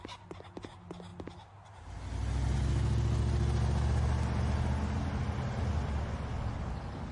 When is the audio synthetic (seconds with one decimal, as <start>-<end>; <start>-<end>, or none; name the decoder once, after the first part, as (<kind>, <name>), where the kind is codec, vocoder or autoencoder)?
none